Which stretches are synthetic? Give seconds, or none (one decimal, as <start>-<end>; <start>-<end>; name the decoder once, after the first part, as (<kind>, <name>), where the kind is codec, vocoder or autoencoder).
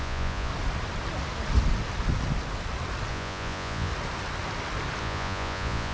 0.0-0.5 (vocoder, Vocos); 3.1-3.9; 5.0-5.9